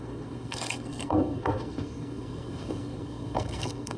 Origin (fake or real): fake